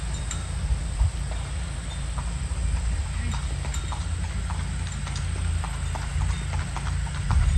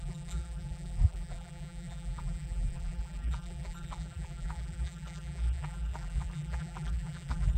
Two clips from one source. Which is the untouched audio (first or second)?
first